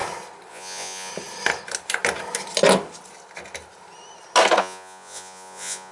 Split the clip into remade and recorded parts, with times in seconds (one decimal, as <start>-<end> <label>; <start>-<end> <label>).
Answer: 0.0-0.5 recorded; 0.5-1.1 remade; 1.1-4.6 recorded; 4.6-5.9 remade